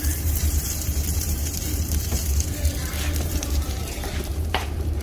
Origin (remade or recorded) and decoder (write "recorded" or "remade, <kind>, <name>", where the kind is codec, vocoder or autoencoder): remade, vocoder, BigVGAN v2